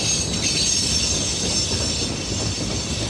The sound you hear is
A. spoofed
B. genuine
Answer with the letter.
B